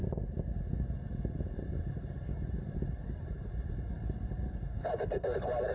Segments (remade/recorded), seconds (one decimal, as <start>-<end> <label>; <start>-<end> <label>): 0.0-1.7 recorded; 1.7-5.7 remade